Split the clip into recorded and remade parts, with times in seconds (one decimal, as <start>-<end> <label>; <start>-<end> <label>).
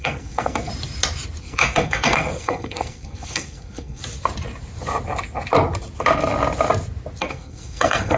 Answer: 0.0-0.7 remade; 0.7-1.4 recorded; 1.4-4.0 remade; 4.0-7.2 recorded; 7.2-8.2 remade